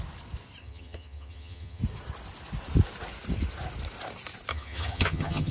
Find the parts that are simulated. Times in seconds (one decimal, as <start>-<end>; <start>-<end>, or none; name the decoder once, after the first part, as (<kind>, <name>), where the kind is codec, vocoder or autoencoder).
0.6-1.8 (vocoder, HiFi-GAN); 4.5-5.5